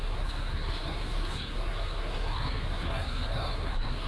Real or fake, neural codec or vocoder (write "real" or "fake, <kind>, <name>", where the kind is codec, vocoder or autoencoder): fake, codec, SNAC